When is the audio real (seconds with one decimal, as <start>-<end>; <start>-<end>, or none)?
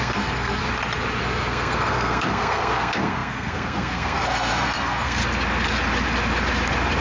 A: 0.6-1.2; 5.2-7.0